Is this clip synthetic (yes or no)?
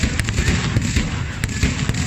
no